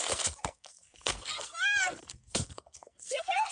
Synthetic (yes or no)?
yes